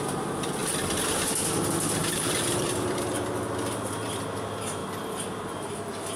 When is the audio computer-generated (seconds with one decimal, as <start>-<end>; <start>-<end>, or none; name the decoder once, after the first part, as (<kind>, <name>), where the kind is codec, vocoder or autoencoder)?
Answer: 0.6-1.3 (vocoder, BigVGAN v2); 2.0-3.0; 4.8-5.7